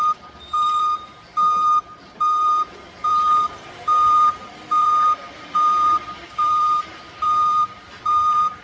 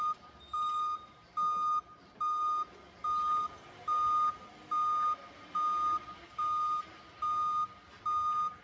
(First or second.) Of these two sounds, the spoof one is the first